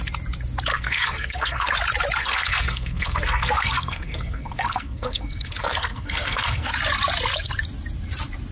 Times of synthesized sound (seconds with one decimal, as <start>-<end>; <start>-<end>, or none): 0.7-1.7; 2.2-6.7